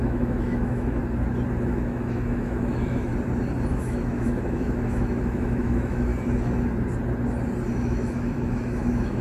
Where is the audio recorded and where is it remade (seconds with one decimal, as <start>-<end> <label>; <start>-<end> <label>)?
0.0-1.0 remade; 1.0-1.6 recorded; 1.6-3.1 remade; 3.1-3.7 recorded; 3.7-6.1 remade; 6.1-7.7 recorded; 7.7-9.2 remade